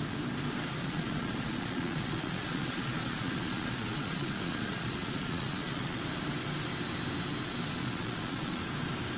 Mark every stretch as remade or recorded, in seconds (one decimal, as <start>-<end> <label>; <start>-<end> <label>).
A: 0.0-0.8 recorded; 0.8-6.0 remade; 6.0-7.8 recorded; 7.8-8.6 remade; 8.6-9.2 recorded